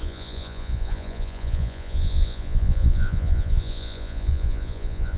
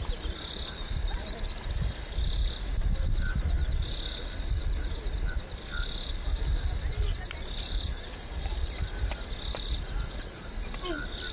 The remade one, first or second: first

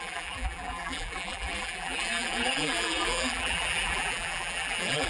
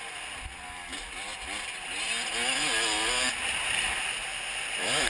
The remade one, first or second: first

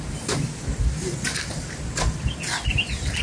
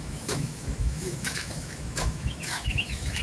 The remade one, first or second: second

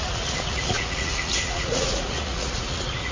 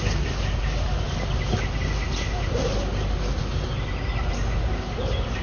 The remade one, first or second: first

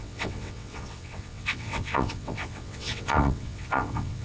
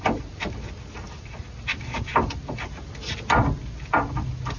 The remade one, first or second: first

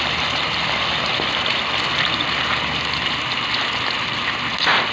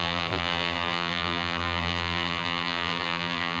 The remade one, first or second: second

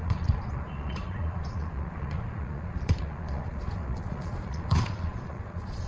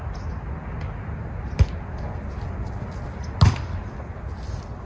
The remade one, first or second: first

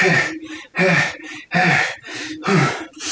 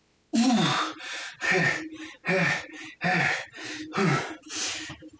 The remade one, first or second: first